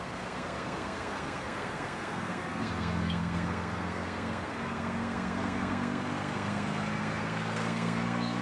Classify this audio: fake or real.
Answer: fake